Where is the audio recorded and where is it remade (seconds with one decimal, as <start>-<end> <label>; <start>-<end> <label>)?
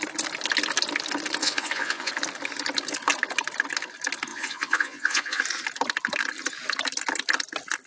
0.0-1.4 recorded; 1.4-2.1 remade; 2.1-4.3 recorded; 4.3-5.4 remade; 5.4-7.9 recorded